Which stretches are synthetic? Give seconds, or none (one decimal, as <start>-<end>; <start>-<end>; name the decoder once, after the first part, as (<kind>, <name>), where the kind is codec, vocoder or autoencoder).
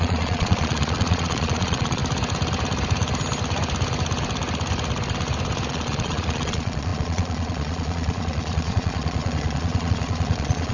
0.0-2.0 (vocoder, Vocos); 5.7-10.7